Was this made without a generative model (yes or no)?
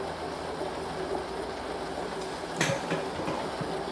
yes